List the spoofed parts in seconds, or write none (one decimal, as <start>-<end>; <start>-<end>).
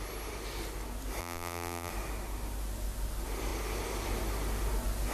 1.2-1.9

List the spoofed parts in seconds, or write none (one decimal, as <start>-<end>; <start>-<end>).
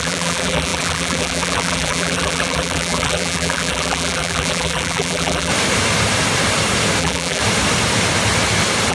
0.0-5.5; 7.0-7.4